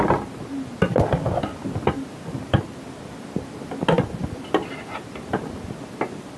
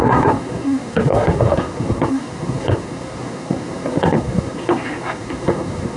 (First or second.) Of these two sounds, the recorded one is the first